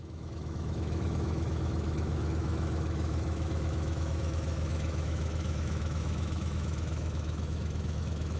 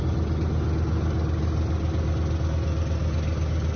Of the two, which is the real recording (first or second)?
second